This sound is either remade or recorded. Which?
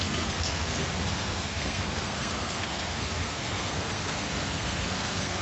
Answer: remade